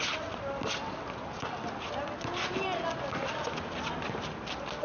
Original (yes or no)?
yes